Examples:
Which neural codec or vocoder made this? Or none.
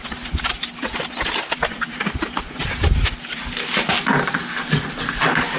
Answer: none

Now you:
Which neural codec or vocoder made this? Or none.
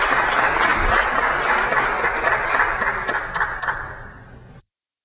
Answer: none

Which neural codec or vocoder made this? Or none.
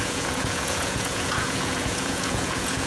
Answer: vocoder, Vocos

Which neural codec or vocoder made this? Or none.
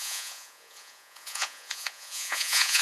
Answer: vocoder, Vocos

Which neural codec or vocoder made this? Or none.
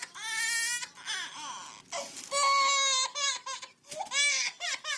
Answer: none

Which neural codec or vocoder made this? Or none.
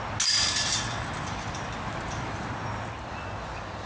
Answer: none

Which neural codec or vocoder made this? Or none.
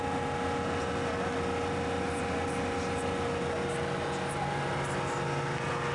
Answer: none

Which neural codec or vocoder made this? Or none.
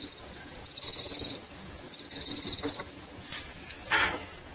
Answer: vocoder, Vocos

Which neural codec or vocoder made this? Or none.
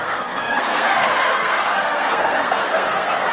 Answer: codec, SNAC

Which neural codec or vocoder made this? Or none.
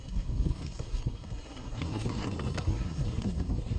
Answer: codec, SNAC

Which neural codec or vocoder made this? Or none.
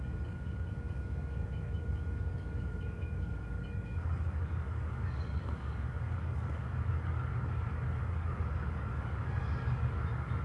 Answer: codec, DAC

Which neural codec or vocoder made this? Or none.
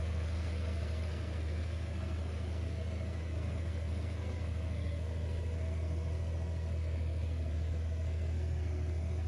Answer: codec, SNAC